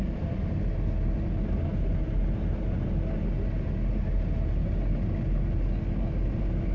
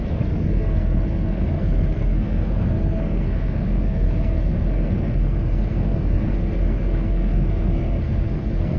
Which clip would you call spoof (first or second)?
second